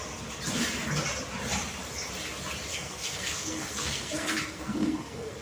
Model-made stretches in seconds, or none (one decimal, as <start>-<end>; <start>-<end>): 2.7-5.4